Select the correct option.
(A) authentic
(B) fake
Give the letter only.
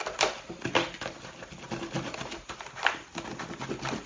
A